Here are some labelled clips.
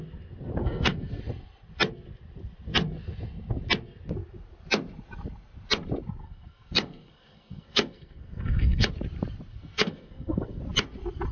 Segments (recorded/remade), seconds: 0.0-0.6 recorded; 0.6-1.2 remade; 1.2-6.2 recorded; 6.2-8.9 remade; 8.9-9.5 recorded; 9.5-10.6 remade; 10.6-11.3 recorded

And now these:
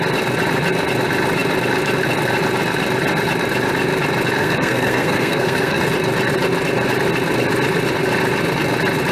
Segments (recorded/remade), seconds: 0.0-4.4 recorded; 4.4-5.8 remade; 5.8-9.1 recorded

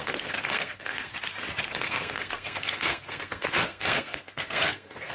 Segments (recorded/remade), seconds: 0.0-1.1 remade; 1.1-1.7 recorded; 1.7-5.1 remade

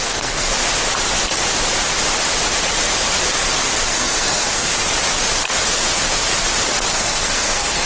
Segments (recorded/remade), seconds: 0.0-0.5 remade; 0.5-3.9 recorded; 3.9-4.7 remade; 4.7-6.9 recorded; 6.9-7.9 remade

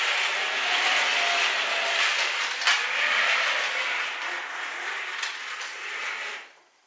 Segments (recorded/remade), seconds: 0.0-6.9 recorded

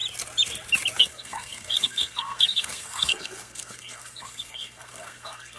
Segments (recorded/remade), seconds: 0.0-1.0 recorded; 1.0-5.6 remade

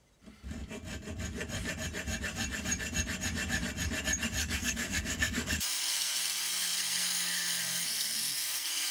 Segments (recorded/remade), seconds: 0.0-4.4 recorded; 4.4-8.9 remade

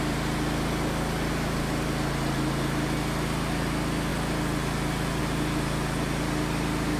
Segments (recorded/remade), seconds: 0.0-7.0 recorded